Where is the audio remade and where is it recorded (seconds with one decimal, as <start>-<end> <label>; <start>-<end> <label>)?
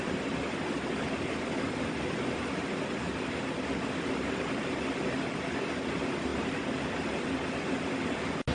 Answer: 0.0-8.5 recorded